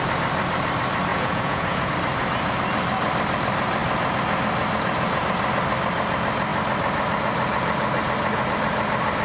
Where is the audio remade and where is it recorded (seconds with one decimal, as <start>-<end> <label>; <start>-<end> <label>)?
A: 0.0-1.1 recorded; 1.1-1.9 remade; 1.9-9.2 recorded